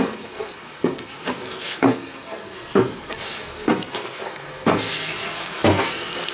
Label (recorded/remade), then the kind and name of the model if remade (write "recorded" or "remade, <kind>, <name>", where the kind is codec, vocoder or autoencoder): remade, codec, SNAC